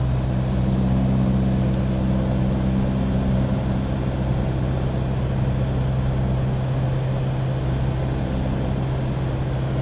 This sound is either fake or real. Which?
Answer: real